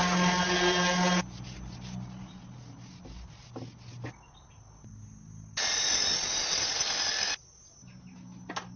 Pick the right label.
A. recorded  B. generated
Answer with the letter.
A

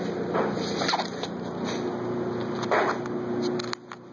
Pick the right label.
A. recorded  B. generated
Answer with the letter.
A